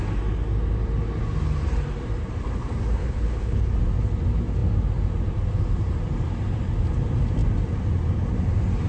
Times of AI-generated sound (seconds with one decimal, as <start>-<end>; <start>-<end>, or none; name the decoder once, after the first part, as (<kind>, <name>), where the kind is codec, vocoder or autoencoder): 3.0-3.6 (codec, HILCodec)